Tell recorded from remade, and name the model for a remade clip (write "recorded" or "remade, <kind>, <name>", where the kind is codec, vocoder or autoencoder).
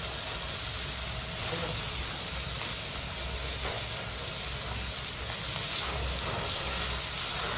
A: recorded